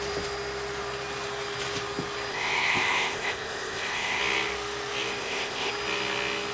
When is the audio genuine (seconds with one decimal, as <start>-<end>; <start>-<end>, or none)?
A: 0.0-2.3; 4.2-5.2; 5.7-6.5